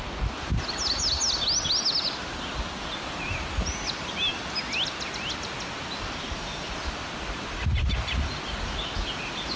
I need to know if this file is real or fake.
real